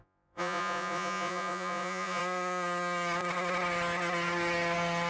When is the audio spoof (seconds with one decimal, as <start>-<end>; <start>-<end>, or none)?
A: 0.0-2.2